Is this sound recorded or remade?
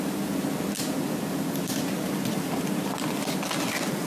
recorded